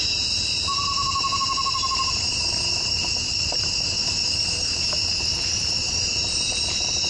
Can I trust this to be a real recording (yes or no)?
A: no